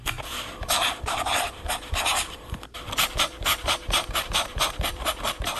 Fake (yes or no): yes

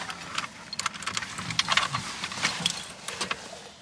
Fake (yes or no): no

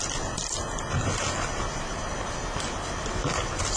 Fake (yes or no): no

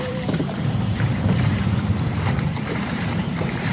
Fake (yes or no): yes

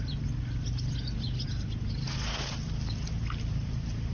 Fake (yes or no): no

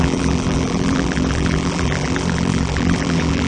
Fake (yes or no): yes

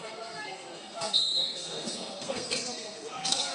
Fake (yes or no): yes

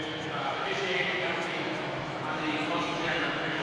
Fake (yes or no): yes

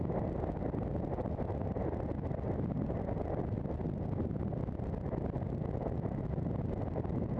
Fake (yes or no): no